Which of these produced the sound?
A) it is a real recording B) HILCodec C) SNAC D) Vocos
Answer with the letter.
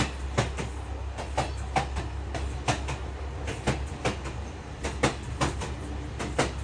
A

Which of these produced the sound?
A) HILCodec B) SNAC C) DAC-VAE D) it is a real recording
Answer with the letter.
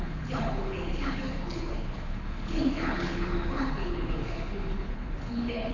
A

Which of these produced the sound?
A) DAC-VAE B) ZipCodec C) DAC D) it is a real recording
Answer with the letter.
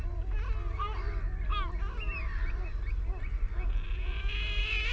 D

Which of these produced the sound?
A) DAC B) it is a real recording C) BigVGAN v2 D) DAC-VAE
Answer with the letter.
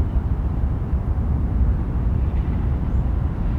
C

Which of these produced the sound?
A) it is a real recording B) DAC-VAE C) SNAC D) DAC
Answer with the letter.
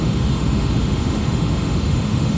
B